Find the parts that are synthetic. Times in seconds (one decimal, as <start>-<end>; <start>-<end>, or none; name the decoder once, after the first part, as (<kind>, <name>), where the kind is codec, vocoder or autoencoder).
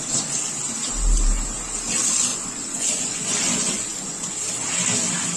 2.3-4.3 (vocoder, Vocos)